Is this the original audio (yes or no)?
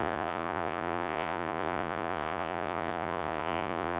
no